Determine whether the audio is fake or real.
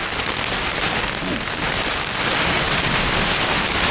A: real